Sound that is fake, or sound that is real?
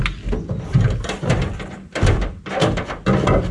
real